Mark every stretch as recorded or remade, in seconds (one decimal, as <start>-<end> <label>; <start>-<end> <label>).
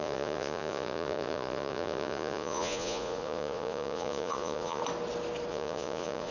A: 0.0-4.8 remade; 4.8-5.5 recorded; 5.5-6.3 remade